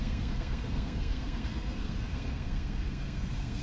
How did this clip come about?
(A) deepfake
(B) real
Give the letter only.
A